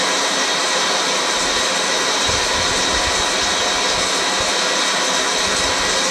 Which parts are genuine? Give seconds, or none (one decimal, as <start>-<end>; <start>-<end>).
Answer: 0.0-0.6; 1.5-6.1

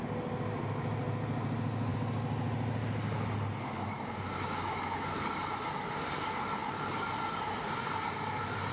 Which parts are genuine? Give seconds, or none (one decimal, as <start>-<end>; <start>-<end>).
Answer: 0.0-8.7

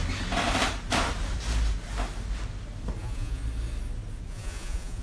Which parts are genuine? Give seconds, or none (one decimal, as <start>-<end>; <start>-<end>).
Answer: 0.0-3.0; 3.4-4.3